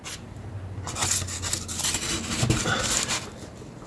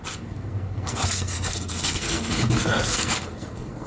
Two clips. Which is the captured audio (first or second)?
first